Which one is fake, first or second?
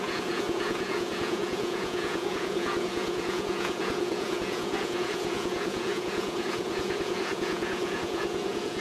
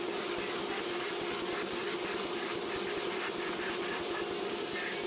first